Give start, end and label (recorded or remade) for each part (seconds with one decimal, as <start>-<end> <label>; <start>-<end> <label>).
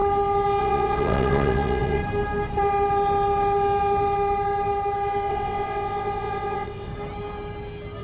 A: 0.0-0.6 recorded; 0.6-2.0 remade; 2.0-5.3 recorded; 5.3-6.9 remade; 6.9-8.0 recorded